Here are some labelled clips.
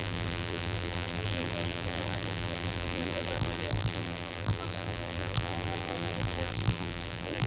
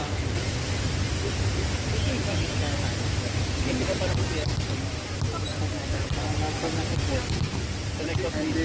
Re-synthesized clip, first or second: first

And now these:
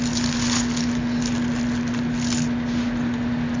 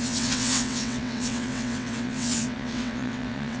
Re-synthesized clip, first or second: second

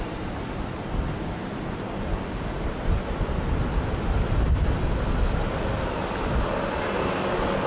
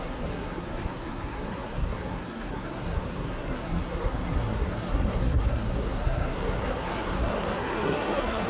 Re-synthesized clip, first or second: second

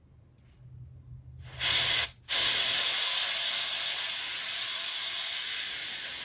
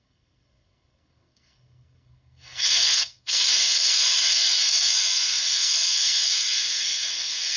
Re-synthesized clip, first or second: second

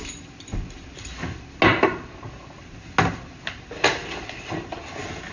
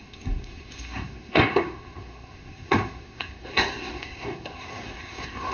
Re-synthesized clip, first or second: second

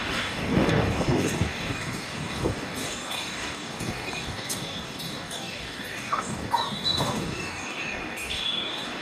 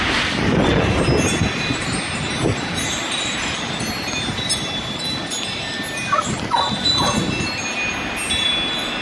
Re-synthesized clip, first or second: first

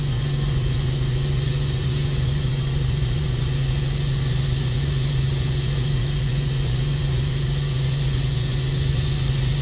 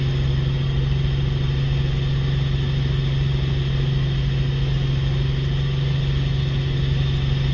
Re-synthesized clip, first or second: first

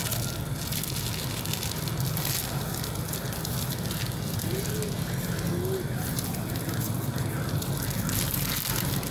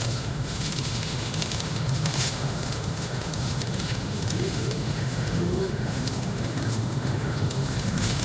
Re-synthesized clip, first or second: second